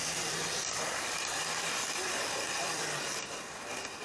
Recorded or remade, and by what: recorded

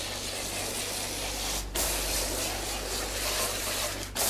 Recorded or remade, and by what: recorded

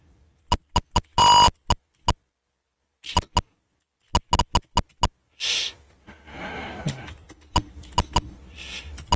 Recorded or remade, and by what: recorded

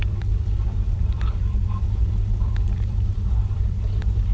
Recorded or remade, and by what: remade, vocoder, BigVGAN v2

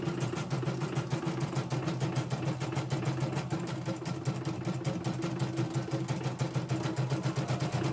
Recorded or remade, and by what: recorded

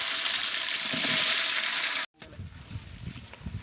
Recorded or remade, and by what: recorded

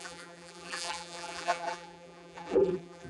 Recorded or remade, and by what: remade, vocoder, BigVGAN v2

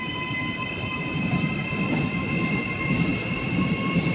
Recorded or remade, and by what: remade, vocoder, BigVGAN v2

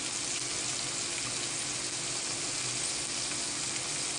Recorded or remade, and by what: recorded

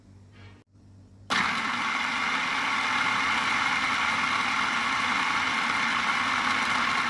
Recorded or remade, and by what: recorded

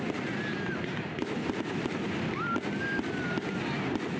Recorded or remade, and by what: recorded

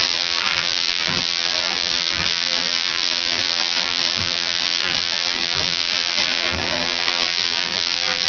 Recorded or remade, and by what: remade, vocoder, BigVGAN v2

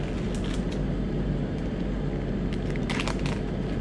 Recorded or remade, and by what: recorded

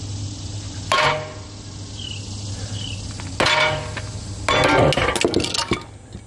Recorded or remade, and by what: recorded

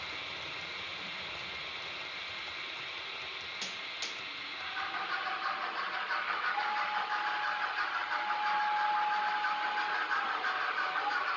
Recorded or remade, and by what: recorded